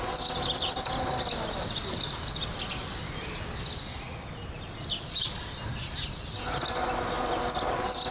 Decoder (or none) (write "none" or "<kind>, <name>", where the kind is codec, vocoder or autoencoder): none